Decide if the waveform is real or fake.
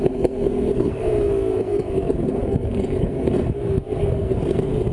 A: fake